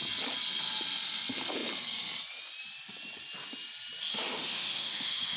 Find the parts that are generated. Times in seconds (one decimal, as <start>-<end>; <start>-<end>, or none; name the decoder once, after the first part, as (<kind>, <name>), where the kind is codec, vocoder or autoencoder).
4.1-5.4 (autoencoder, DAC-VAE)